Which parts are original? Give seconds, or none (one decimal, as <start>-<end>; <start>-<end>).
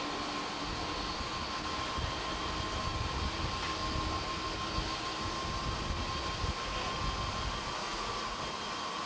0.0-7.8; 8.4-9.1